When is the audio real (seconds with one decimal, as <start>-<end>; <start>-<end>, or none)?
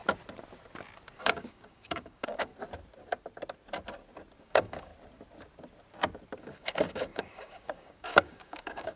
0.0-1.2; 2.5-4.4; 4.9-6.4